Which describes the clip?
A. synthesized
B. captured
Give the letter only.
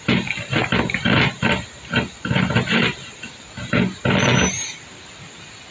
B